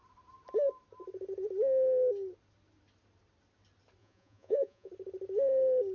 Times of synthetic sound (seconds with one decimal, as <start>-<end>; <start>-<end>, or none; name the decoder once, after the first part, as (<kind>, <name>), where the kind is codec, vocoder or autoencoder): 4.0-4.9 (vocoder, Vocos)